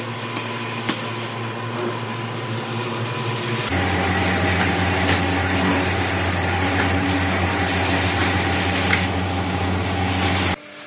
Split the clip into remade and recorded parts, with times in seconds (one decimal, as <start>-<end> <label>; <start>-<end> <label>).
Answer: 0.0-10.9 recorded